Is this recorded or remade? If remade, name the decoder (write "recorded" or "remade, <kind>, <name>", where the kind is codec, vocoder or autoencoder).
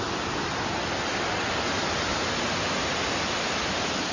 recorded